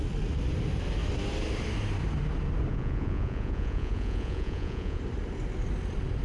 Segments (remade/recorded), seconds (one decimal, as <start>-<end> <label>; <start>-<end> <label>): 0.0-2.7 recorded; 2.7-5.0 remade; 5.0-6.2 recorded